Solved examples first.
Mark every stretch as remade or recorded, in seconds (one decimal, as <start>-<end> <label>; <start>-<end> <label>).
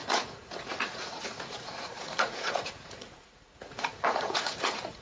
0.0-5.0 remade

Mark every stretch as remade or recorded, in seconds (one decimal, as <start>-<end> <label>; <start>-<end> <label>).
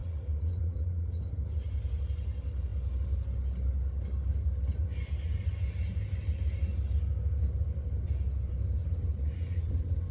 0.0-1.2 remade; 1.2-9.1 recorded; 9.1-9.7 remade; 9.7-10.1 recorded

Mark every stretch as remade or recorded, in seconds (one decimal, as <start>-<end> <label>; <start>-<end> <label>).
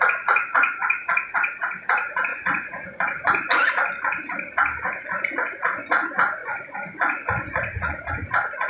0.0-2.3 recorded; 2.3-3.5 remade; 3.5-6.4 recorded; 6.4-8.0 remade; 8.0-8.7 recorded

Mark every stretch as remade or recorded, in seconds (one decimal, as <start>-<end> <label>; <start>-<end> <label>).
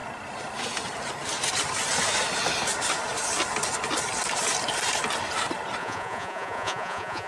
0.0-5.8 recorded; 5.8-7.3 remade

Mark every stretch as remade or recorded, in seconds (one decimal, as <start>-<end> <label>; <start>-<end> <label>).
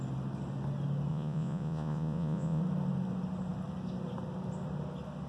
0.0-1.1 recorded; 1.1-2.6 remade; 2.6-5.3 recorded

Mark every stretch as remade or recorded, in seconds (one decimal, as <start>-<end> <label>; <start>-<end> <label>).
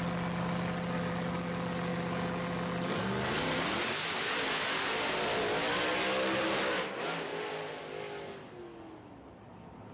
0.0-9.9 recorded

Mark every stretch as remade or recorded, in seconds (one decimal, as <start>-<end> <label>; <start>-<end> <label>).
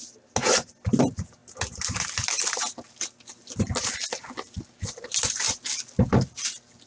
0.0-6.9 recorded